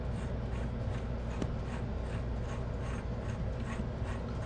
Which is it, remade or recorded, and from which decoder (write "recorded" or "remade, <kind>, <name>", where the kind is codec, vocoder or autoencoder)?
recorded